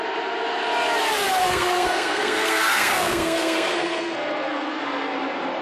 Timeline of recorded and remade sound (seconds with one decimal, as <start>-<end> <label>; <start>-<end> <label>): 0.0-1.4 recorded; 1.4-4.8 remade; 4.8-5.6 recorded